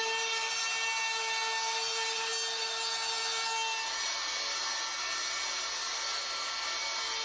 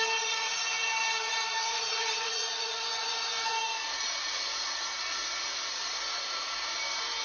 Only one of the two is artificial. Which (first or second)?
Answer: second